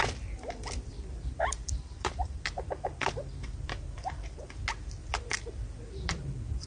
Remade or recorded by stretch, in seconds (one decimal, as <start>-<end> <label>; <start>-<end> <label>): 0.0-0.9 recorded; 0.9-4.4 remade; 4.4-5.0 recorded; 5.0-6.7 remade